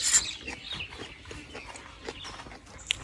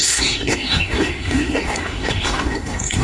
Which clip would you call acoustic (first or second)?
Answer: first